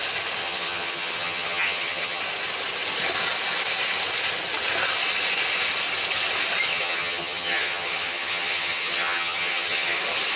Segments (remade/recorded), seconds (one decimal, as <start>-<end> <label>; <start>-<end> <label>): 0.0-0.4 recorded; 0.4-2.2 remade; 2.2-6.7 recorded; 6.7-10.0 remade; 10.0-10.4 recorded